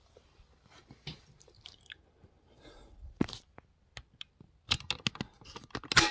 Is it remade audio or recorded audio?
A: recorded